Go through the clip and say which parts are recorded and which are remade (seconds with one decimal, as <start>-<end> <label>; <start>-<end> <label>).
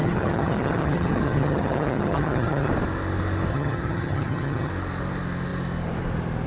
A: 0.0-2.7 remade; 2.7-3.5 recorded; 3.5-4.7 remade; 4.7-6.5 recorded